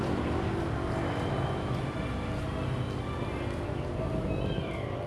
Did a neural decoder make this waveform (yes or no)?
no